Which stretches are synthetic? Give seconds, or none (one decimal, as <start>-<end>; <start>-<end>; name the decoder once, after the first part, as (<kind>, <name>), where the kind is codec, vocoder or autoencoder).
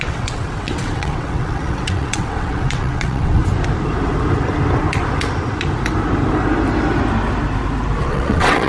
0.0-3.4 (vocoder, WaveNeXt); 8.0-8.7